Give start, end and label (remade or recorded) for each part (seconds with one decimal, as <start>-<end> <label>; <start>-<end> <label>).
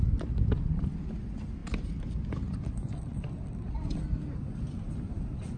0.0-5.6 recorded